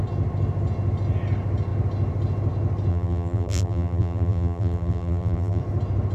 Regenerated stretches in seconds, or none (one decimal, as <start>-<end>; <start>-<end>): 2.9-5.6